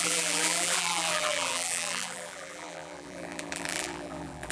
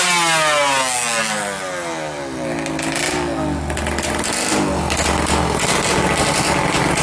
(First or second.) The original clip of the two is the second